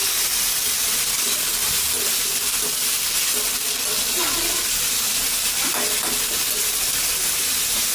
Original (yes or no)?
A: yes